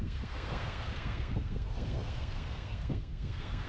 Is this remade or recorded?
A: remade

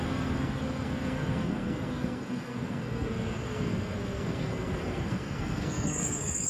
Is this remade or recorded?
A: remade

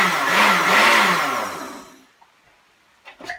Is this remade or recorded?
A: recorded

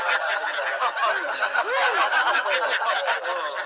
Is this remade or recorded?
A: recorded